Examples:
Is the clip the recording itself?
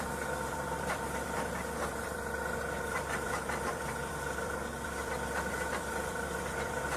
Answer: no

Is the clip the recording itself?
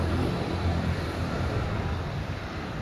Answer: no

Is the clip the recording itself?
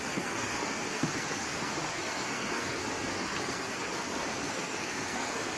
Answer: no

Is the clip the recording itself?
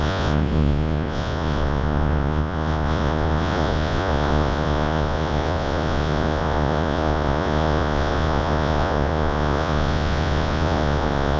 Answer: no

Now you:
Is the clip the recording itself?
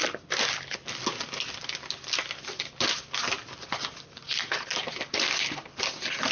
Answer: yes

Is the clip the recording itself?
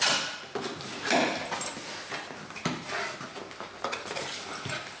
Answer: yes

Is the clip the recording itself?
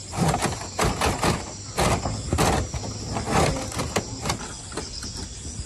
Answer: yes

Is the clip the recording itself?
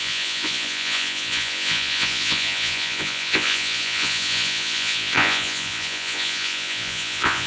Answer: no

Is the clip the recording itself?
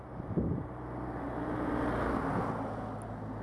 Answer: yes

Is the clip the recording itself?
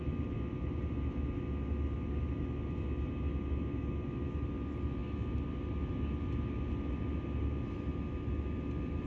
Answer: yes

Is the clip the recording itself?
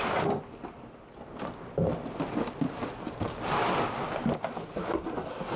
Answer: yes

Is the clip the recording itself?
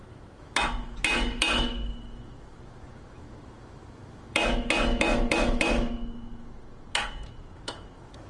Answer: no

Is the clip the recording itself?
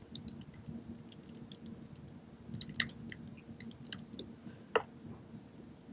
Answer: yes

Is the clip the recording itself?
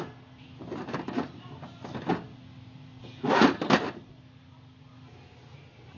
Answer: yes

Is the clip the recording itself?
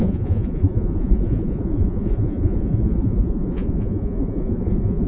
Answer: no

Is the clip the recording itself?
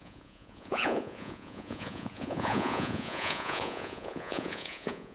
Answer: no